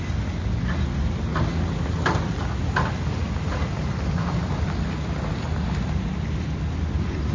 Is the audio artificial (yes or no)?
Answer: no